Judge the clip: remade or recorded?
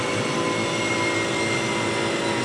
recorded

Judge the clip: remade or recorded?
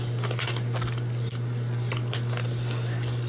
recorded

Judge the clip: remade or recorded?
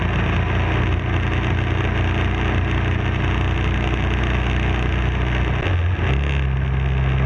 recorded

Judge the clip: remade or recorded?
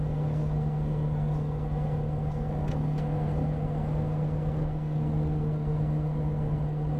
remade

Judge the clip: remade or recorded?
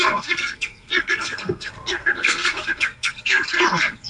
remade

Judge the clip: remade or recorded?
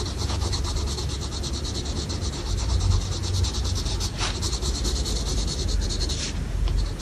recorded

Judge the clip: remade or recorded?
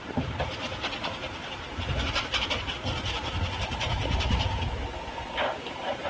recorded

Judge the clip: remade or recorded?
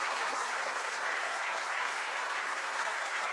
remade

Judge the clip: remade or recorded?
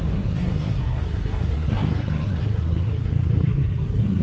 remade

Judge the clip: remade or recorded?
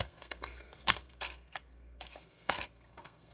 remade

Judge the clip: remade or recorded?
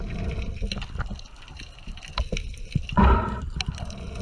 recorded